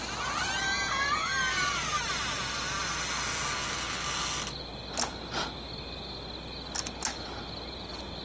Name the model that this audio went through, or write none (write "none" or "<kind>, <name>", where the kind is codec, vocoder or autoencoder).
none